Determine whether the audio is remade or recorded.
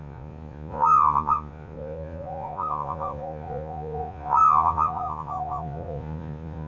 remade